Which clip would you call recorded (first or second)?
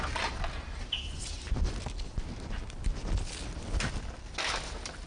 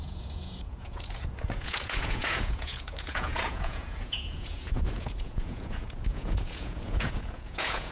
first